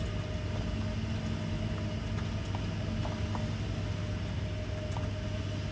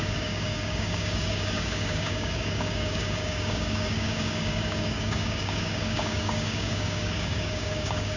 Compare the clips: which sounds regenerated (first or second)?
second